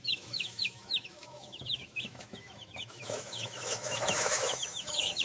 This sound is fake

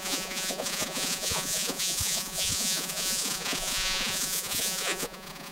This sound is fake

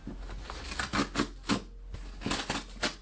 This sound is real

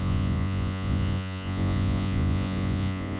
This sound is fake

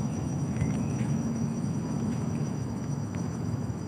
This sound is fake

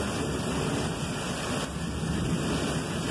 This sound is real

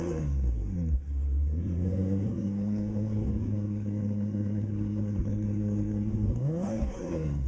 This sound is fake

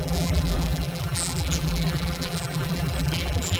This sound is fake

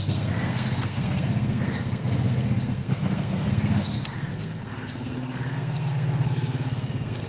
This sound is fake